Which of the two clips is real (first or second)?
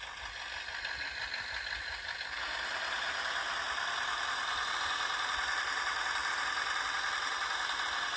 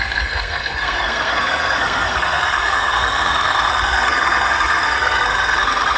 first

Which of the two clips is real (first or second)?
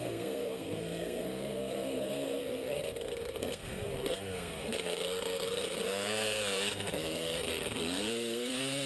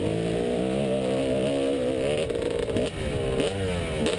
second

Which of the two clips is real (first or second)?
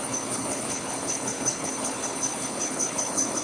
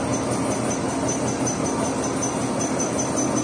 second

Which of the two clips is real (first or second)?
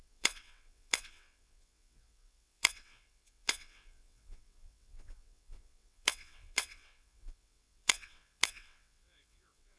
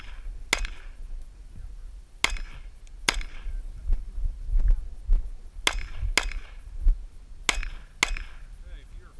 second